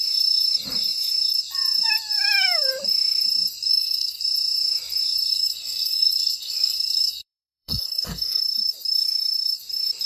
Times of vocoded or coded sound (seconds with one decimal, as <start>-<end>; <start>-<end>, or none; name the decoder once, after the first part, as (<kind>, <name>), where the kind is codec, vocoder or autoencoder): 3.7-4.2 (codec, SNAC); 5.3-8.4

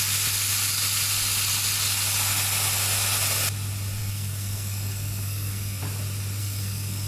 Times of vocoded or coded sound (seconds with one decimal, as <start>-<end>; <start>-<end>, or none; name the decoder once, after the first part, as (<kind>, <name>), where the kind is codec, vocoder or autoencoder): 4.0-5.8 (codec, SNAC); 6.4-7.1

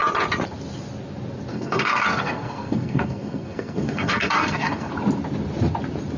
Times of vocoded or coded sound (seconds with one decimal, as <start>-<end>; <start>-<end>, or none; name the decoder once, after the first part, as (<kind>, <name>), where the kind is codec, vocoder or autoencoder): 1.5-4.9 (codec, SNAC)

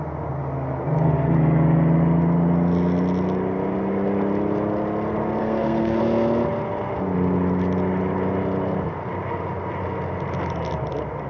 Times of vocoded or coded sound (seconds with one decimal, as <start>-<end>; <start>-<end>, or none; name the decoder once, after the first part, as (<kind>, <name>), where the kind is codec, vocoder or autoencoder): 5.4-6.0 (codec, SNAC)

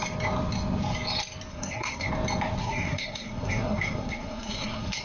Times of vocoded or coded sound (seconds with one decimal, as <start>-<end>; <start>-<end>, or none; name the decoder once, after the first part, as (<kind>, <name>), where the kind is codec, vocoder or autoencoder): 1.5-2.1 (codec, SNAC); 2.6-5.0